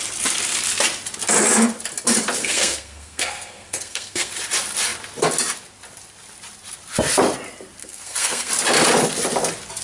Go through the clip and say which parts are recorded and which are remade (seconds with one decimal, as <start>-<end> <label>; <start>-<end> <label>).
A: 0.0-2.4 recorded; 2.4-4.3 remade; 4.3-7.8 recorded; 7.8-8.5 remade; 8.5-9.8 recorded